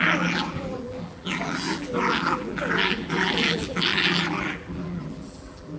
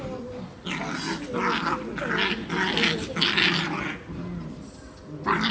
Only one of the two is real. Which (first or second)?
second